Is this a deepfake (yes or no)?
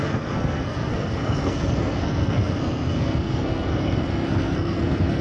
yes